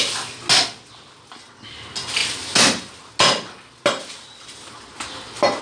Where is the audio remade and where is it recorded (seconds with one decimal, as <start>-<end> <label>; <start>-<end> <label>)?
0.0-5.6 recorded